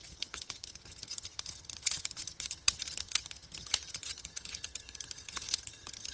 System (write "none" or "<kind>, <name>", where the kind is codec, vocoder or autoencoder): vocoder, HiFi-GAN